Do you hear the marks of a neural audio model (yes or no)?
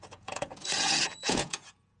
yes